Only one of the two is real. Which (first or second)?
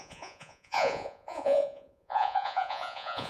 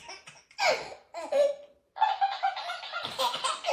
second